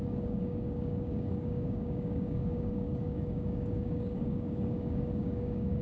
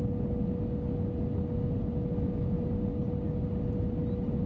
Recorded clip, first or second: second